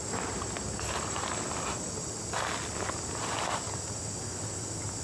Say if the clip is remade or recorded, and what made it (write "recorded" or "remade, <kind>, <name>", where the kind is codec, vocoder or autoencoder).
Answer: recorded